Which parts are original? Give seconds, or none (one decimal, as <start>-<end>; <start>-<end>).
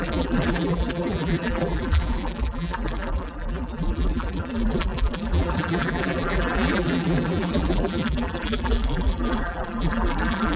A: none